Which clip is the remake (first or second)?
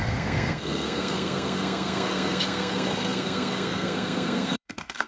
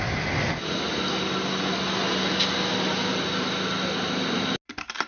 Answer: first